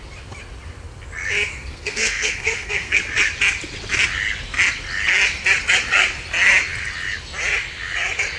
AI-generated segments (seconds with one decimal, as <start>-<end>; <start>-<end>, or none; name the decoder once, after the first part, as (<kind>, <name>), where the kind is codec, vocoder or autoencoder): 1.5-3.0 (codec, SNAC)